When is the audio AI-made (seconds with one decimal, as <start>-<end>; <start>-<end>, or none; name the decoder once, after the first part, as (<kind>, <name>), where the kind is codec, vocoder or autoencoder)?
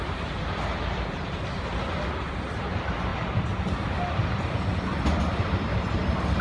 none